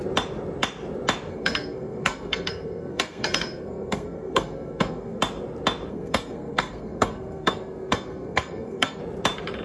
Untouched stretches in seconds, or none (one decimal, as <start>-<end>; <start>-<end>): 0.0-1.3; 5.2-5.9; 9.0-9.6